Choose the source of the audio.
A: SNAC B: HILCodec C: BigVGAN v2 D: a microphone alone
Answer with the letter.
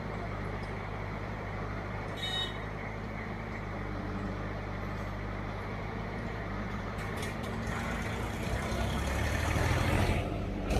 C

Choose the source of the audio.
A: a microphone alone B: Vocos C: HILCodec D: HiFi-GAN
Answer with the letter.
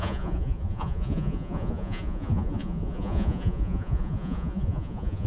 B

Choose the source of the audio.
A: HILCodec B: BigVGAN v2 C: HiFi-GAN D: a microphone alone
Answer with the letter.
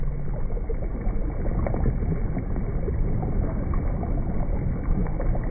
D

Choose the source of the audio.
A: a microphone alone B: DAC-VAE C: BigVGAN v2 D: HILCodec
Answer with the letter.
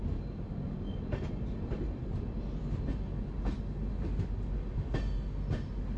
A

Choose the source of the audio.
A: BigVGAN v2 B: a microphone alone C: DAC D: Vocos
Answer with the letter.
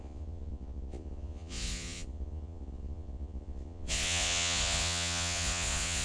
D